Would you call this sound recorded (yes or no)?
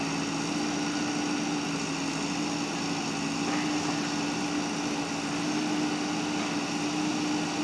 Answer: yes